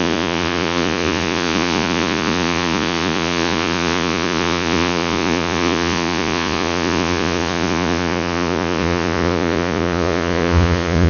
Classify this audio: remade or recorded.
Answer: remade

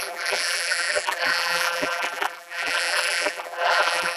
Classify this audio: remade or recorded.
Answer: remade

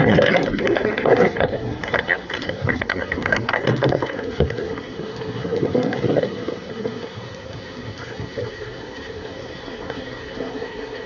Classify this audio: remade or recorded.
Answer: remade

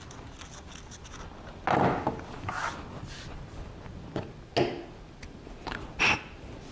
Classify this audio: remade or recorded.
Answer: recorded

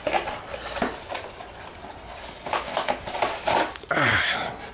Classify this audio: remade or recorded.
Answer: recorded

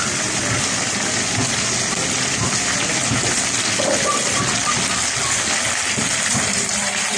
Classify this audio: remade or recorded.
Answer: recorded